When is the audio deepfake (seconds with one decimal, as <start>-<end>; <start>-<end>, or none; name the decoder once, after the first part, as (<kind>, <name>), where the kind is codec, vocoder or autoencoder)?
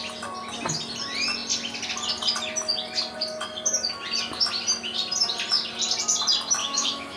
6.6-7.2 (autoencoder, DAC-VAE)